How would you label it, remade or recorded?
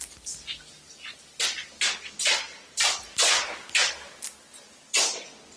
recorded